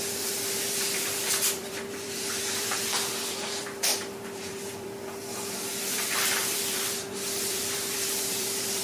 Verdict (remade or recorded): remade